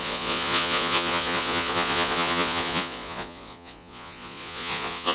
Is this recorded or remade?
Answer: remade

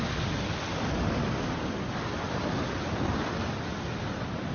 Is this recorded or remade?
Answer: recorded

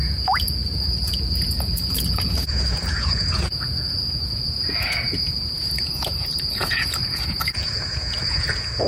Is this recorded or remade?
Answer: remade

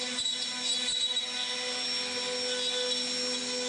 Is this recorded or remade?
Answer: recorded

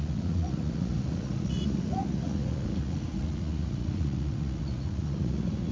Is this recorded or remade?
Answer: remade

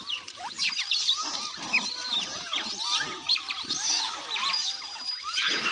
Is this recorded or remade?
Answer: recorded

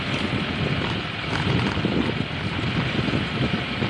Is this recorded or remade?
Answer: recorded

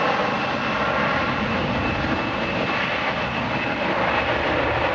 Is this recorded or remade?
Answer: recorded